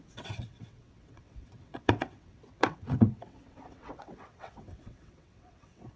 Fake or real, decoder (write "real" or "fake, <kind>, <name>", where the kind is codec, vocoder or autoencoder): fake, vocoder, WaveNeXt